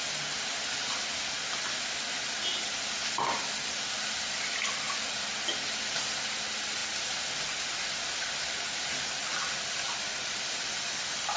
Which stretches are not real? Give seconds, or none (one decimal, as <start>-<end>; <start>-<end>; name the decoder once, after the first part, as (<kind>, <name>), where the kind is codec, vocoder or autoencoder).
none